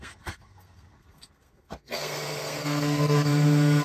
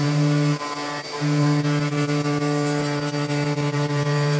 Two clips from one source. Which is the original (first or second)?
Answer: second